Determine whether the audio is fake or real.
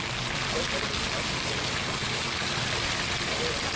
real